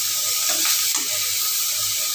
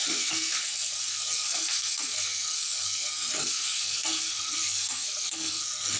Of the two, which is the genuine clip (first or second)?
first